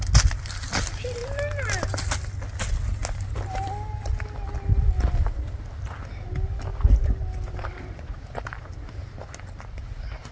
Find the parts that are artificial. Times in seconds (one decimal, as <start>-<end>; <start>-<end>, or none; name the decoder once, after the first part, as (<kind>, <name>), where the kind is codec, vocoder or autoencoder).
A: 6.7-8.7 (vocoder, BigVGAN v2)

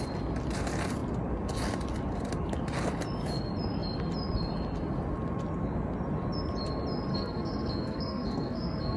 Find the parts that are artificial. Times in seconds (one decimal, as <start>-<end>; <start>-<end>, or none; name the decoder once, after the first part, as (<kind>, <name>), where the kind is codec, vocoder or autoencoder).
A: 7.1-9.0 (codec, SNAC)